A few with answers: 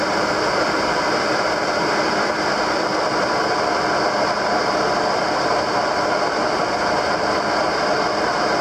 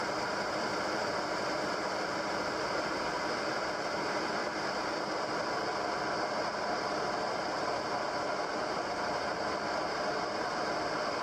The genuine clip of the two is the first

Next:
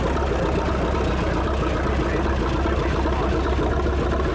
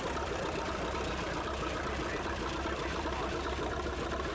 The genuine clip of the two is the first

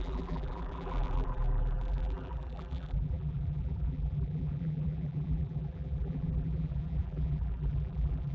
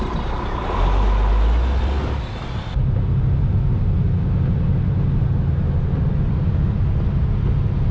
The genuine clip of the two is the second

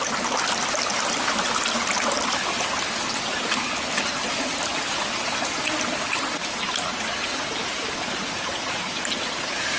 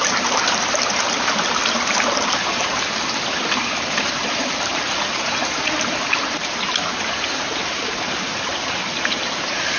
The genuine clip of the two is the first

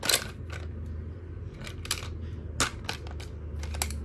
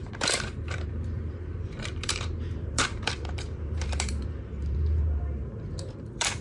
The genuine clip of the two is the first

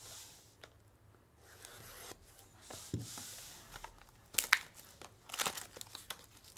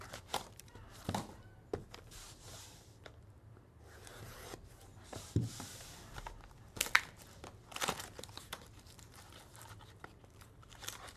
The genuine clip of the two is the first